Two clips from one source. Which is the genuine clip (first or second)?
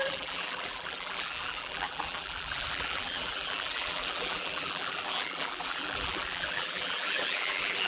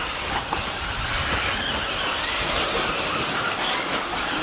second